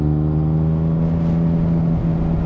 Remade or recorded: recorded